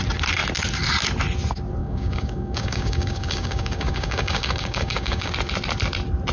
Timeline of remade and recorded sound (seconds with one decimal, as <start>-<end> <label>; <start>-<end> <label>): 0.0-1.8 recorded; 1.8-5.3 remade; 5.3-6.3 recorded